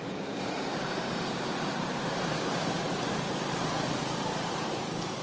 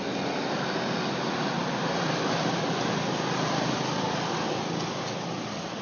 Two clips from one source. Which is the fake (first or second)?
first